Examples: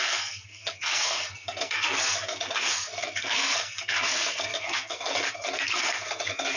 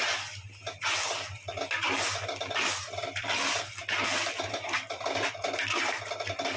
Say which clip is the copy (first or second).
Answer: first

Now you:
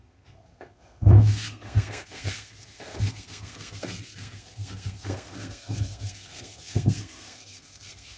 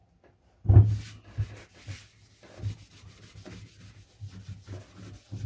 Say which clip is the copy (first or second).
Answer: first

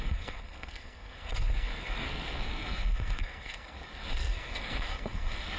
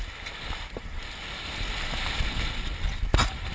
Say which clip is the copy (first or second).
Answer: first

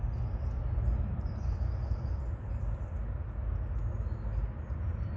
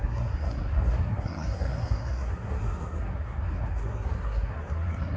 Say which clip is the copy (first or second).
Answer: second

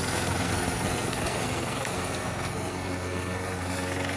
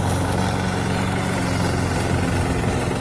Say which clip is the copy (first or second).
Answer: first